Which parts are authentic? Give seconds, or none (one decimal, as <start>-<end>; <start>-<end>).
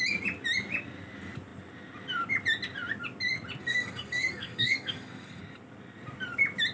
0.0-3.6; 5.4-6.7